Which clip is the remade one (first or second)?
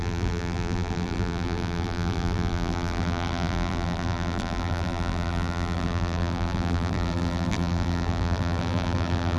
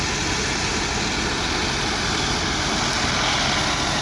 first